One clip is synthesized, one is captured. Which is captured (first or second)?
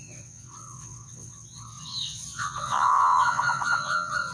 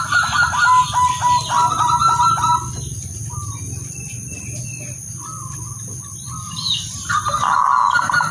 second